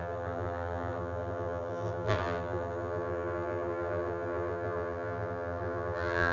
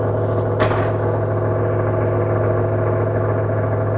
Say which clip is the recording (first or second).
second